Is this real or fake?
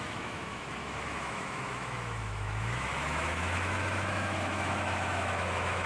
fake